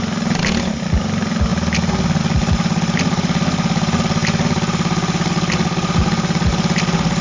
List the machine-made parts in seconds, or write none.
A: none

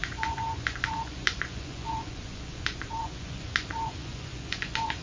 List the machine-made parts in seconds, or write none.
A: 0.0-5.0 (vocoder, Vocos)